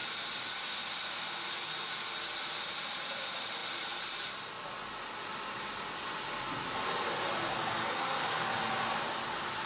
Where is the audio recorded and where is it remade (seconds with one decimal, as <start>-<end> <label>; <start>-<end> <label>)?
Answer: 0.0-7.5 recorded; 7.5-8.3 remade; 8.3-9.7 recorded